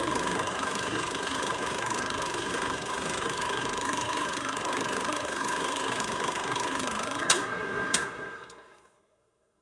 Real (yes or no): no